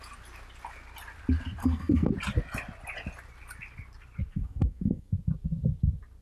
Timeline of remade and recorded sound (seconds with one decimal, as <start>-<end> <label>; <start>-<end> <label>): 0.0-1.6 recorded; 1.6-2.1 remade; 2.1-4.3 recorded; 4.3-5.1 remade; 5.1-6.2 recorded